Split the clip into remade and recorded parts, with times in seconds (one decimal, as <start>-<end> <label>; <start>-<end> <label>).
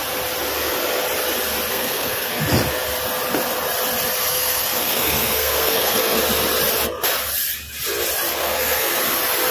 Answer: 0.0-1.7 recorded; 1.7-2.4 remade; 2.4-4.3 recorded; 4.3-6.2 remade; 6.2-8.4 recorded; 8.4-9.0 remade; 9.0-9.5 recorded